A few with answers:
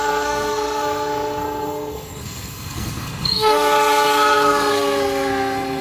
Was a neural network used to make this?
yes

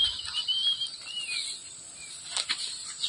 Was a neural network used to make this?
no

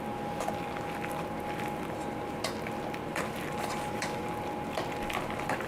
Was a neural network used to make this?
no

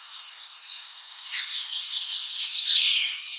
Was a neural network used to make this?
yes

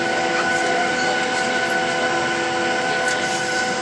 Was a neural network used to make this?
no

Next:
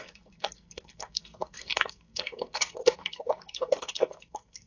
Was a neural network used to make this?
yes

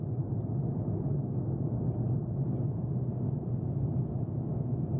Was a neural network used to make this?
no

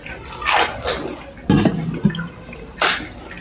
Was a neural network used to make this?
no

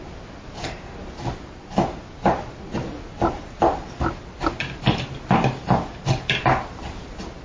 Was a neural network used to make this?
no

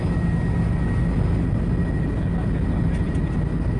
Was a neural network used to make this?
no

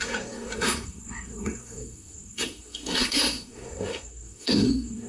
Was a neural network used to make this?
yes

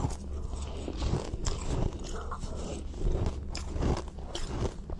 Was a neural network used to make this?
no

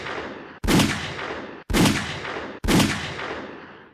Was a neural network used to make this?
no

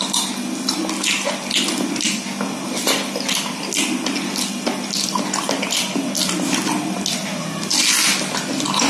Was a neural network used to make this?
no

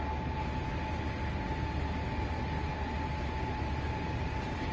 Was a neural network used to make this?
no